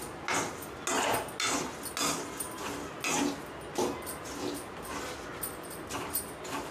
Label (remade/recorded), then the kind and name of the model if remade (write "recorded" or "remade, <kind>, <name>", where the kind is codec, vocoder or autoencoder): recorded